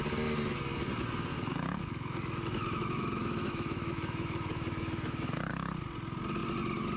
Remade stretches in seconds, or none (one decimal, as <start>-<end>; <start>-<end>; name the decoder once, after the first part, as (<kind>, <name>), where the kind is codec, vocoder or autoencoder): 1.3-5.5 (autoencoder, DAC-VAE)